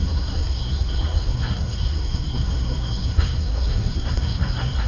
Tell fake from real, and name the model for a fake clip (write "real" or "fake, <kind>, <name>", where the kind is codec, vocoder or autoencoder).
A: fake, codec, SNAC